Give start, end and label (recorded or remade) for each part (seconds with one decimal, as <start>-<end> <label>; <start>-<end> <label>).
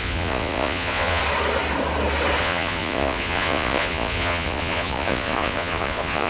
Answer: 0.0-1.2 remade; 1.2-2.4 recorded; 2.4-6.3 remade